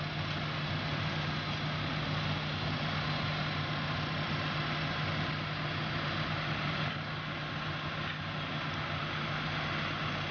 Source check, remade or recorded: recorded